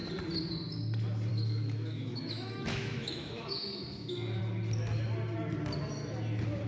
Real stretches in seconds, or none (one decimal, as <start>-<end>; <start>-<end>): 0.0-1.3; 4.4-6.7